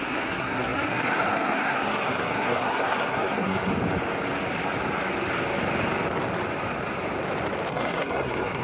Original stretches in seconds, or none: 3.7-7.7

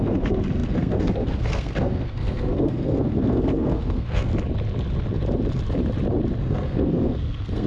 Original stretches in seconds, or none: 4.3-6.4

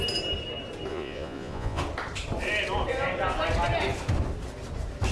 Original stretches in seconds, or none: 0.0-0.9; 1.8-5.1

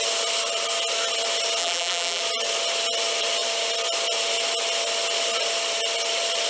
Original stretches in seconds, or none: 0.0-1.6; 2.2-6.5